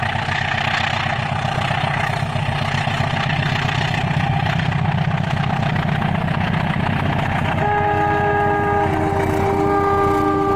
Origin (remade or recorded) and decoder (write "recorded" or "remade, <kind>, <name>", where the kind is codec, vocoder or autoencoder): recorded